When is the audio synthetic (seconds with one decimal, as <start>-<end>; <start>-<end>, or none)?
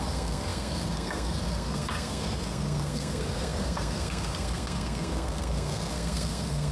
0.0-6.7